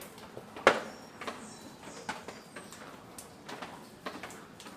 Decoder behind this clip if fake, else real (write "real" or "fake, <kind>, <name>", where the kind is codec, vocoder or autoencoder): real